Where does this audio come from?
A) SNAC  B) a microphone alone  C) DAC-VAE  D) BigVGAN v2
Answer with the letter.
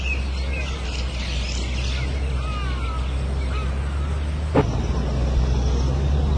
B